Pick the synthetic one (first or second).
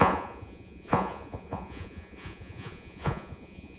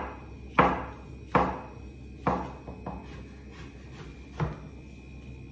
first